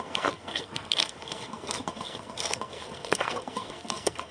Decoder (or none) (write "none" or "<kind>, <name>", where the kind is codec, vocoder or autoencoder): codec, SNAC